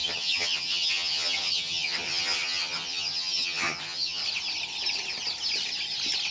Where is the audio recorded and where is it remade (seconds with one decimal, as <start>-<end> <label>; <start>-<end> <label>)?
0.0-4.2 remade; 4.2-6.3 recorded